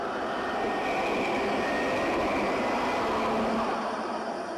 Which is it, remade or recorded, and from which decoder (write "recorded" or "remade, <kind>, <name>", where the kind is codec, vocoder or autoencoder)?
recorded